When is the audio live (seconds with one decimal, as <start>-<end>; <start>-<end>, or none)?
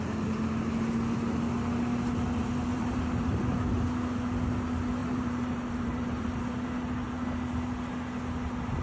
0.0-2.7; 3.4-5.0; 6.5-8.8